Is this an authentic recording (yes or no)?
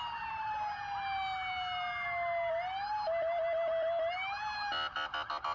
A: yes